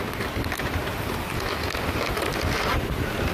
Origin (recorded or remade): recorded